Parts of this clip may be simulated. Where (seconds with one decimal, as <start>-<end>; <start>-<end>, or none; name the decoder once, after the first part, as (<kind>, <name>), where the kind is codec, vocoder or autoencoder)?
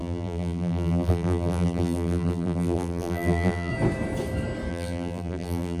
0.0-3.7 (vocoder, BigVGAN v2); 4.7-5.8